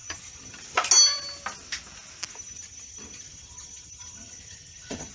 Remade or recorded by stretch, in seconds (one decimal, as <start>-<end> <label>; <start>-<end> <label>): 0.0-0.6 remade; 0.6-2.3 recorded; 2.3-5.1 remade